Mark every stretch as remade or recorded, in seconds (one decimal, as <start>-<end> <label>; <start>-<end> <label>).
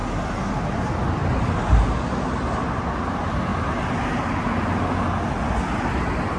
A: 0.0-6.4 recorded